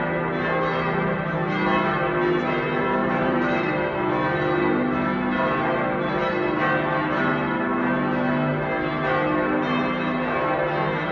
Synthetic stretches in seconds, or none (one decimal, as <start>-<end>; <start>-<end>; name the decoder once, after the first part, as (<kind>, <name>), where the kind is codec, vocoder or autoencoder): 3.0-3.7 (vocoder, BigVGAN v2)